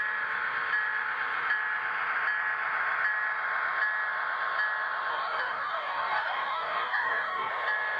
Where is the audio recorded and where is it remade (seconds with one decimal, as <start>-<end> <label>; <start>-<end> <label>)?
0.0-5.1 recorded; 5.1-7.5 remade; 7.5-8.0 recorded